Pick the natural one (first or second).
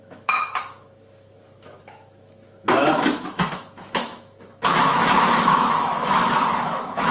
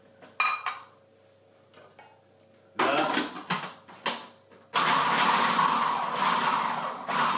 second